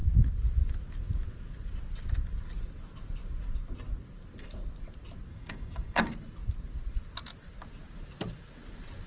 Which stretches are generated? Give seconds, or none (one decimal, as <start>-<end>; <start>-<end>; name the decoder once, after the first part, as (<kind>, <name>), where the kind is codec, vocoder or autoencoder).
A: 5.3-6.1 (codec, DAC)